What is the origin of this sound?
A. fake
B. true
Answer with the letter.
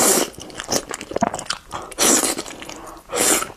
B